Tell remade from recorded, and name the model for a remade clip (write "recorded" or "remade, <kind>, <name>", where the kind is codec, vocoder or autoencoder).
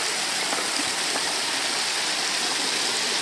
recorded